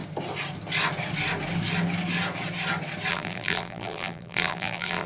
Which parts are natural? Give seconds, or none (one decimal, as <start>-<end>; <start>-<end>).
0.0-3.1